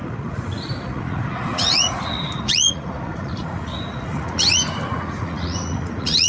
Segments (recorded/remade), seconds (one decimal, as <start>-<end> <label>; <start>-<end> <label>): 0.0-6.3 remade

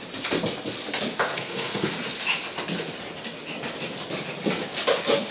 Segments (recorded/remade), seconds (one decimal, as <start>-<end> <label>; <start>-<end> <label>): 0.0-1.3 recorded; 1.3-1.9 remade; 1.9-5.3 recorded

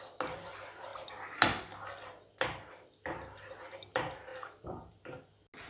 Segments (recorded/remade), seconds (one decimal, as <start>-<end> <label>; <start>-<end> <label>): 0.0-4.3 recorded; 4.3-5.0 remade; 5.0-5.7 recorded